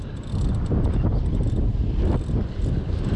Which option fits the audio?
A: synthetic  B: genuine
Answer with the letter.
B